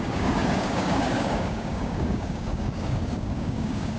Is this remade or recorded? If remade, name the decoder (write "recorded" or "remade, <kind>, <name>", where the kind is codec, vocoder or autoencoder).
remade, codec, DAC